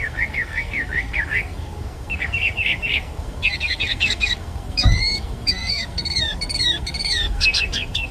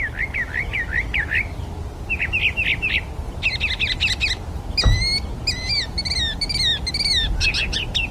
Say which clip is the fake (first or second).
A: first